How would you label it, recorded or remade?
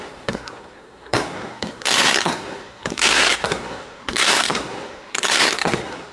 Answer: remade